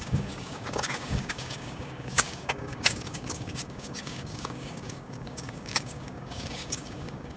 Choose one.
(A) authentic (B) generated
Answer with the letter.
B